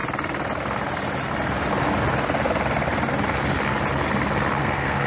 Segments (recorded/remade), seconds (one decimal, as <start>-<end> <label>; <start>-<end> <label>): 0.0-4.6 recorded; 4.6-5.1 remade